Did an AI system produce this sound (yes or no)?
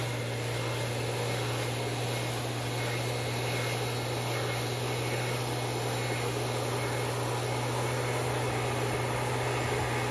no